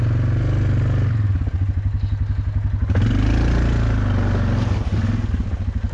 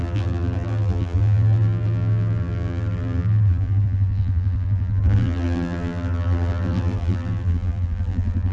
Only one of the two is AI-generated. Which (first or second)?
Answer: second